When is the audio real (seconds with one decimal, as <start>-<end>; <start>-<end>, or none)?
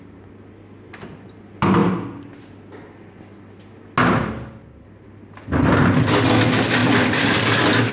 0.0-7.9